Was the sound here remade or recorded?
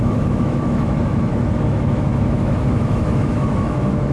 remade